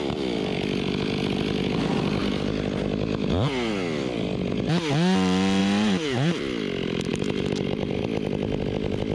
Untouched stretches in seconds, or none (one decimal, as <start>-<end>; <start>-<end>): 0.0-5.6; 6.4-7.1; 8.0-9.1